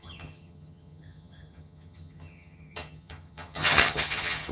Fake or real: fake